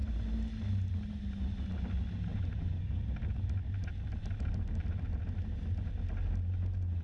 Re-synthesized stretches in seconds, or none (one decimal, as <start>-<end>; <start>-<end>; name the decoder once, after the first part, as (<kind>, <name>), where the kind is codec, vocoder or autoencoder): 2.3-3.3 (vocoder, BigVGAN v2)